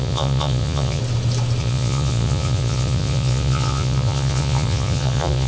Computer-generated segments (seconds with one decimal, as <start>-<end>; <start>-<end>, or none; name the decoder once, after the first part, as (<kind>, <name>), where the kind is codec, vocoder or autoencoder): 0.0-1.0 (vocoder, Vocos); 1.6-5.5